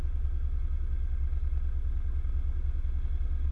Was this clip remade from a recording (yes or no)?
no